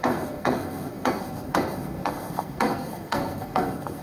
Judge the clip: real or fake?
fake